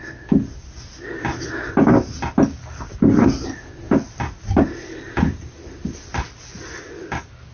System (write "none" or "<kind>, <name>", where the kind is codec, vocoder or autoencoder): none